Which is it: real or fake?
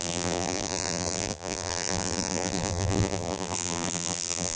fake